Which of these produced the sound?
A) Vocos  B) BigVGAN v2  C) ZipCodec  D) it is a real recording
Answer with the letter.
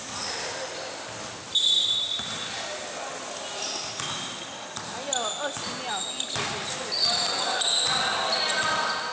D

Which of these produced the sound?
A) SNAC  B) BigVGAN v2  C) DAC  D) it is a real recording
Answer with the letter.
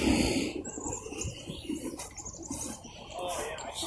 D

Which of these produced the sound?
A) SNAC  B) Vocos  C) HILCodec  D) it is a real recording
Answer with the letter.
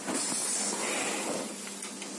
D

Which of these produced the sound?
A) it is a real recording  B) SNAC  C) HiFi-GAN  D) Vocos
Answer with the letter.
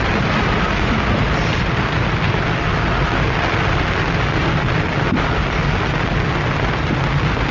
A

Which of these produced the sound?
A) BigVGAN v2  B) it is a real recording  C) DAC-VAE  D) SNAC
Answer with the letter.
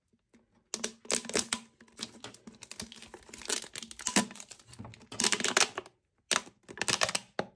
B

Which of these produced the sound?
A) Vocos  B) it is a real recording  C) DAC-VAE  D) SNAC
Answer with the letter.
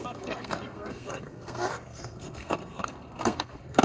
D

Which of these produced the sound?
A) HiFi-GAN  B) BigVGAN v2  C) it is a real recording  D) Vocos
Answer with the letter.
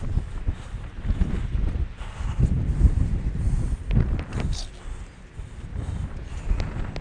C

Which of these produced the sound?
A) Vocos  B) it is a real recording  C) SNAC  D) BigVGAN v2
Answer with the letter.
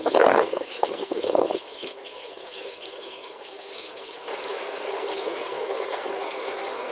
C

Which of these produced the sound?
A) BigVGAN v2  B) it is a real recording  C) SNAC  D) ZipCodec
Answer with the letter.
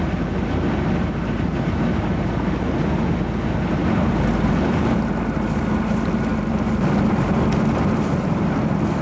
B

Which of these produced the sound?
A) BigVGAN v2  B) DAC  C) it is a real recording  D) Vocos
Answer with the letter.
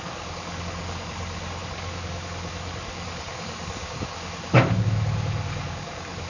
B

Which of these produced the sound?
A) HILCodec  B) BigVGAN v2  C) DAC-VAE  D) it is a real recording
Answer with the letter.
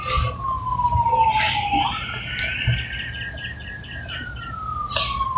D